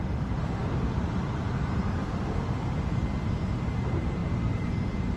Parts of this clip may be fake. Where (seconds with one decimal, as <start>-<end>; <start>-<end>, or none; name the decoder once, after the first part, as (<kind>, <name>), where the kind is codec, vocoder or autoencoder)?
none